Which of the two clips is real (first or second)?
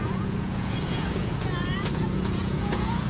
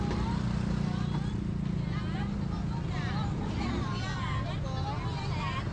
second